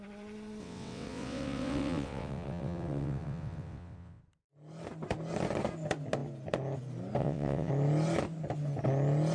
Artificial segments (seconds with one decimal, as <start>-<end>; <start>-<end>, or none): 0.6-4.2; 7.2-7.7